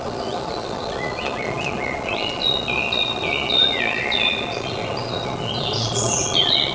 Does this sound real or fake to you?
fake